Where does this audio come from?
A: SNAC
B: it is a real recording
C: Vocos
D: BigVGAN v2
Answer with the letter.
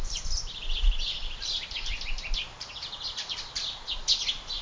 D